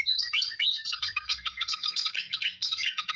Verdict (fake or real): fake